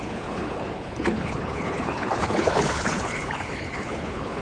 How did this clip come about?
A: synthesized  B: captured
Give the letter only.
A